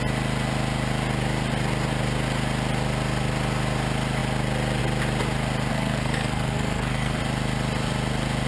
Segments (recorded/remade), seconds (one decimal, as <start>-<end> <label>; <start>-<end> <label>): 0.0-5.7 recorded; 5.7-7.2 remade; 7.2-8.5 recorded